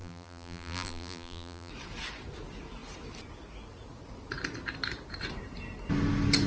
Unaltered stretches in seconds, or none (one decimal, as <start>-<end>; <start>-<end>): 1.7-6.5